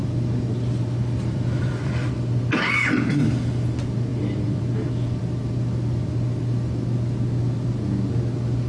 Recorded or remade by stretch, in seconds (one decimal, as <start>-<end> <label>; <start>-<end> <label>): 0.0-2.5 remade; 2.5-4.1 recorded; 4.1-5.2 remade; 5.2-8.7 recorded

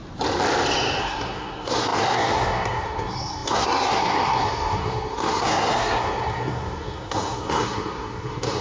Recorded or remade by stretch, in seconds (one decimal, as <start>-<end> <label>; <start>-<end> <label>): 0.0-1.0 recorded; 1.0-8.6 remade

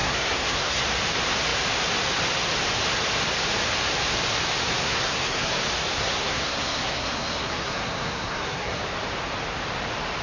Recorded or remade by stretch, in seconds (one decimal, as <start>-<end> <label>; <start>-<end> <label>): 0.0-0.8 remade; 0.8-4.8 recorded; 4.8-5.5 remade; 5.5-6.0 recorded; 6.0-8.8 remade; 8.8-10.2 recorded

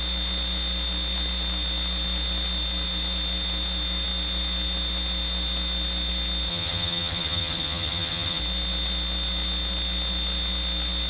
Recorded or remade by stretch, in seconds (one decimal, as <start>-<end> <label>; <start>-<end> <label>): 0.0-6.5 recorded; 6.5-8.4 remade; 8.4-11.1 recorded

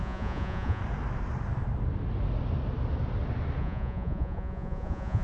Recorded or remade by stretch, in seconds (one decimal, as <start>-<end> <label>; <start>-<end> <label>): 0.0-0.8 remade; 0.8-3.6 recorded; 3.6-5.2 remade

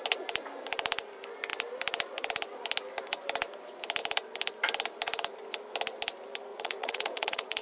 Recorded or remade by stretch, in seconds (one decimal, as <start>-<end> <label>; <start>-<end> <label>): 0.0-6.5 recorded; 6.5-7.6 remade